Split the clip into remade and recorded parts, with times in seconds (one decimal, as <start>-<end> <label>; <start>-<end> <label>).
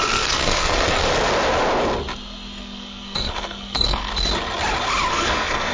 0.0-1.0 remade; 1.0-2.6 recorded; 2.6-4.1 remade; 4.1-5.1 recorded; 5.1-5.7 remade